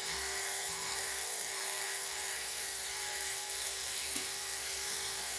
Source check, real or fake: fake